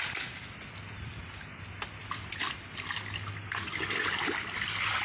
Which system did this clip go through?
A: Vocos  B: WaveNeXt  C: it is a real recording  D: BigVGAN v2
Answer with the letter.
C